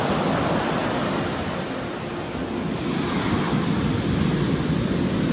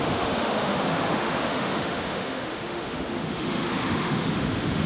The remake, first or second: second